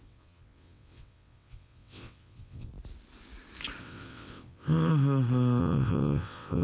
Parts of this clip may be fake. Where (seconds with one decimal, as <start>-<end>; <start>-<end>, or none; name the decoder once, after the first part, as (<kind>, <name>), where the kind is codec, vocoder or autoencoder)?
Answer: 0.0-2.7 (vocoder, WaveNeXt); 3.8-4.9; 5.6-6.6